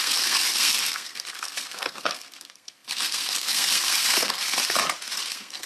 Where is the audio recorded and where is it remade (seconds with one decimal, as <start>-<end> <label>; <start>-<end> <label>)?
0.0-4.6 remade; 4.6-5.3 recorded; 5.3-5.7 remade

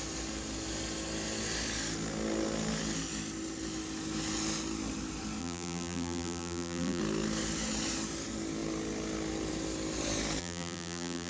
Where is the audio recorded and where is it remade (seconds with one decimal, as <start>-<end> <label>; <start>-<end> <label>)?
0.0-5.4 recorded; 5.4-7.0 remade; 7.0-10.4 recorded; 10.4-11.3 remade

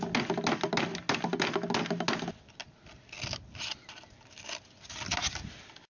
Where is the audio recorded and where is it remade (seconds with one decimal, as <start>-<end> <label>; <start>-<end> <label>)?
0.0-5.9 recorded

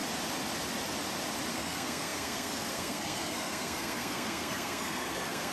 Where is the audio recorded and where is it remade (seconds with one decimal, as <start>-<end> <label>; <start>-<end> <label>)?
0.0-1.5 recorded; 1.5-5.5 remade

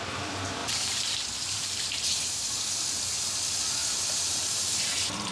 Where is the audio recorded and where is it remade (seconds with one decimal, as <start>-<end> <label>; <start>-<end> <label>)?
0.0-0.6 recorded; 0.6-2.7 remade; 2.7-3.8 recorded; 3.8-5.3 remade